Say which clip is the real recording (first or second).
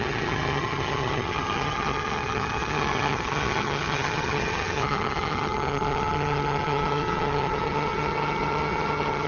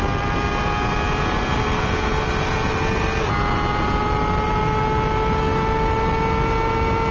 second